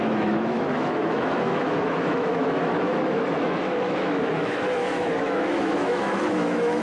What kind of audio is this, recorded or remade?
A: remade